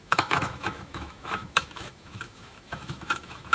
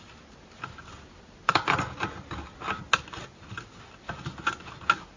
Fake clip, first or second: first